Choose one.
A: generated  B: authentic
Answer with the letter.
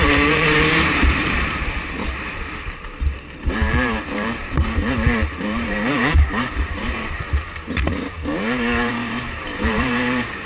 A